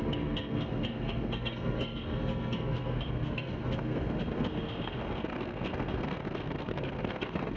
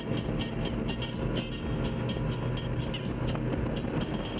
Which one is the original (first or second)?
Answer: second